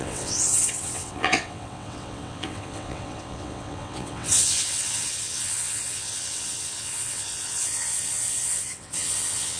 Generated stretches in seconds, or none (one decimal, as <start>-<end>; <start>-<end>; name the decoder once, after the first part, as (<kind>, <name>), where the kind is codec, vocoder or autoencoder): 0.0-9.6 (vocoder, WaveNeXt)